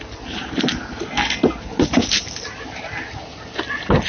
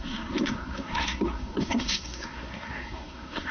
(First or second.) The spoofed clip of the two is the second